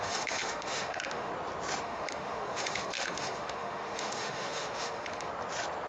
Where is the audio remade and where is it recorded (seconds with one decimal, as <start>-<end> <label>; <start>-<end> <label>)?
0.0-1.3 remade; 1.3-1.8 recorded; 1.8-5.3 remade; 5.3-5.9 recorded

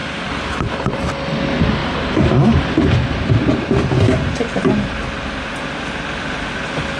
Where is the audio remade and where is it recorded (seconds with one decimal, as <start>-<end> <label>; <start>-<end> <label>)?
0.0-0.5 remade; 0.5-1.8 recorded; 1.8-6.0 remade; 6.0-7.0 recorded

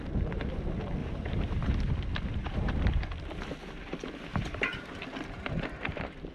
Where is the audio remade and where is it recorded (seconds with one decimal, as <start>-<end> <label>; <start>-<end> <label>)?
0.0-1.0 recorded; 1.0-1.9 remade; 1.9-2.4 recorded; 2.4-3.0 remade; 3.0-4.3 recorded; 4.3-6.3 remade

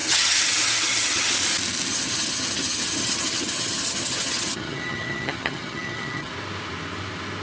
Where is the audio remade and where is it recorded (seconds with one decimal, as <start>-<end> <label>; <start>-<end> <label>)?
0.0-1.3 remade; 1.3-1.9 recorded; 1.9-6.3 remade; 6.3-7.4 recorded

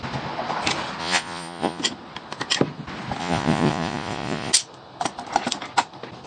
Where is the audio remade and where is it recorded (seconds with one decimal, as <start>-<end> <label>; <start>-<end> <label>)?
0.0-1.0 recorded; 1.0-1.8 remade; 1.8-3.2 recorded; 3.2-4.5 remade; 4.5-6.3 recorded

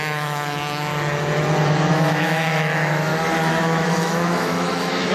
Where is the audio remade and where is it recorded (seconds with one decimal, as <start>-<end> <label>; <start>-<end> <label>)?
0.0-0.9 remade; 0.9-1.9 recorded; 1.9-3.1 remade; 3.1-3.6 recorded; 3.6-5.1 remade

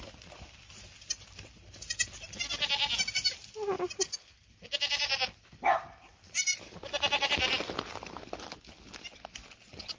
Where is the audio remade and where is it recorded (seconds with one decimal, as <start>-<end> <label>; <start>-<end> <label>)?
0.0-10.0 recorded

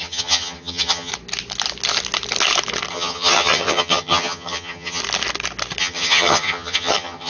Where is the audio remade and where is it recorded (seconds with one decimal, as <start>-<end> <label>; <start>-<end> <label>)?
0.0-1.1 remade; 1.1-2.9 recorded; 2.9-5.0 remade; 5.0-5.8 recorded; 5.8-7.3 remade